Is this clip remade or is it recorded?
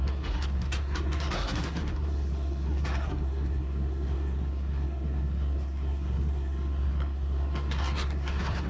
remade